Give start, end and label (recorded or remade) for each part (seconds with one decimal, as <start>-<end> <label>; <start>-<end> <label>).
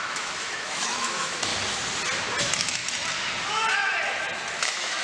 0.0-1.5 remade; 1.5-2.4 recorded; 2.4-2.8 remade; 2.8-4.6 recorded; 4.6-5.0 remade